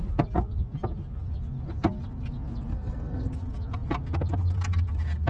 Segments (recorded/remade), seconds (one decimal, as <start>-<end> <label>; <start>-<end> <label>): 0.0-2.7 recorded; 2.7-3.3 remade; 3.3-5.3 recorded